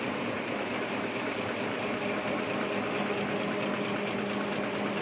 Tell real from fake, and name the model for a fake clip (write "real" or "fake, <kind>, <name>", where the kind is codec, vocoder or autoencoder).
real